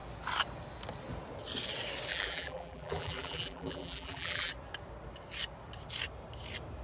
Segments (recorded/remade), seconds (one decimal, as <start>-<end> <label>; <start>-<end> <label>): 0.0-2.1 recorded; 2.1-4.5 remade; 4.5-6.8 recorded